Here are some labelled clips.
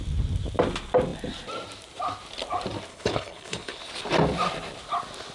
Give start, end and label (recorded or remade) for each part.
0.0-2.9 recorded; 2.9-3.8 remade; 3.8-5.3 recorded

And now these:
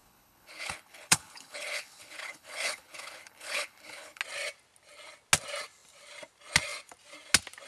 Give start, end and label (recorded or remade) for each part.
0.0-4.2 remade; 4.2-7.7 recorded

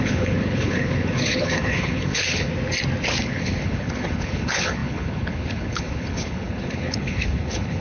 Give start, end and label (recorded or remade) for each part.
0.0-2.5 remade; 2.5-3.2 recorded; 3.2-7.8 remade

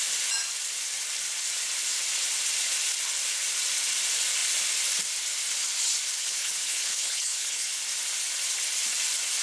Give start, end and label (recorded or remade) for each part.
0.0-6.2 recorded; 6.2-7.7 remade; 7.7-9.4 recorded

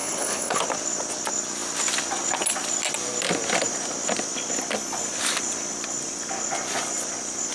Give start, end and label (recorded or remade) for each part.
0.0-0.6 remade; 0.6-7.5 recorded

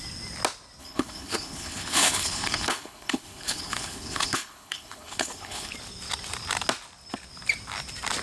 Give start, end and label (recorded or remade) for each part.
0.0-0.8 recorded; 0.8-5.7 remade; 5.7-8.2 recorded

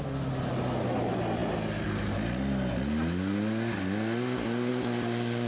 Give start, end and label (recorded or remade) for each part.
0.0-5.5 recorded